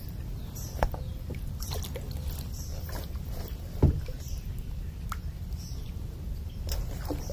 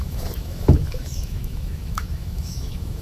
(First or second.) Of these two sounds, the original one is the first